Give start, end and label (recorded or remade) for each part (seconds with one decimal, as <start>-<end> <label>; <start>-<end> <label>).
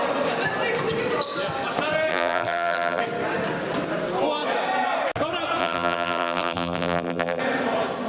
0.0-2.1 recorded; 2.1-3.0 remade; 3.0-5.6 recorded; 5.6-7.4 remade; 7.4-8.1 recorded